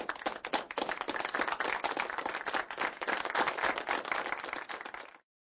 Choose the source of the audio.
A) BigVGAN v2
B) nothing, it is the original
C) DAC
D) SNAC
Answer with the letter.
B